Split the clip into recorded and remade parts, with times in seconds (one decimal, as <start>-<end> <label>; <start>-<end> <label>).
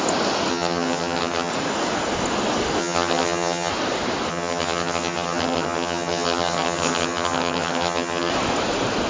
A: 0.0-0.5 recorded; 0.5-1.5 remade; 1.5-2.8 recorded; 2.8-3.7 remade; 3.7-4.3 recorded; 4.3-8.3 remade; 8.3-9.1 recorded